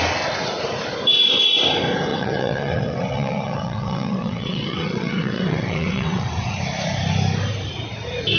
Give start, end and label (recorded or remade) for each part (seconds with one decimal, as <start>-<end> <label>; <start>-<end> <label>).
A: 0.0-2.1 recorded; 2.1-6.6 remade; 6.6-8.4 recorded